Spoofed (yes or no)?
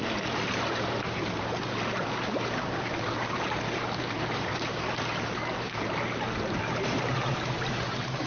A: yes